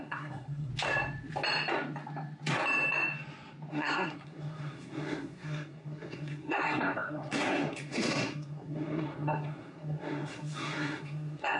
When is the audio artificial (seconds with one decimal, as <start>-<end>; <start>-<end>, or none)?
0.0-0.7; 3.7-11.6